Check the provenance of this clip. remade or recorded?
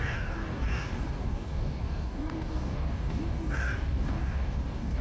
remade